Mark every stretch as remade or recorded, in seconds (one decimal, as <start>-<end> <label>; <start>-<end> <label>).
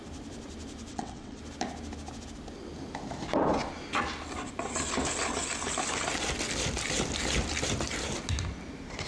0.0-0.9 recorded; 0.9-1.4 remade; 1.4-9.1 recorded